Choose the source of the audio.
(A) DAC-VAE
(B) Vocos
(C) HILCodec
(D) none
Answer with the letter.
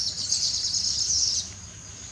D